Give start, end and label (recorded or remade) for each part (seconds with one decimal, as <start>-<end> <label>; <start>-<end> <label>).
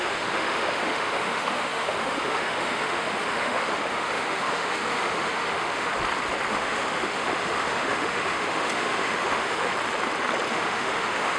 0.0-5.9 remade; 5.9-6.5 recorded; 6.5-9.7 remade; 9.7-10.5 recorded; 10.5-11.4 remade